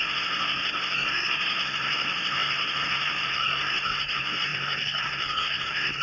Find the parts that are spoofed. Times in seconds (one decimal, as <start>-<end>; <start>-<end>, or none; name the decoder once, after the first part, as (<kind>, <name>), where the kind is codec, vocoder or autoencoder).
0.0-6.0 (codec, SNAC)

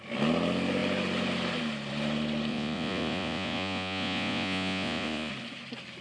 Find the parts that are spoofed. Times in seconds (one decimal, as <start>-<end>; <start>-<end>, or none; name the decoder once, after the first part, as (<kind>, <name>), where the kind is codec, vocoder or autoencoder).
2.5-5.3 (vocoder, Vocos)

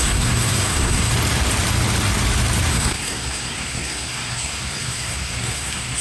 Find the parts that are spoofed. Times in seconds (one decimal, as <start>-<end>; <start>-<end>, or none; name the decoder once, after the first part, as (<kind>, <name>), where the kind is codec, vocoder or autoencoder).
0.0-1.1 (codec, SNAC); 2.7-6.0

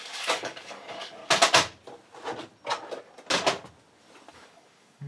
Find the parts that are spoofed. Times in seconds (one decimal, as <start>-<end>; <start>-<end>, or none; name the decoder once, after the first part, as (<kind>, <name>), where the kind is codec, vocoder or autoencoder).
0.0-1.2 (codec, DAC); 4.3-5.1